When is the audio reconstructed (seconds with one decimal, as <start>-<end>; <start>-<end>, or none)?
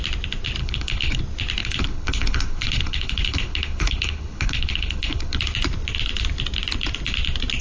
0.6-1.2; 1.6-5.4